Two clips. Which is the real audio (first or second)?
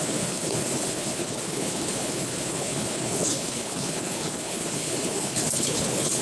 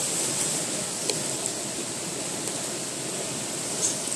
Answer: second